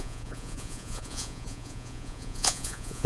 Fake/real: fake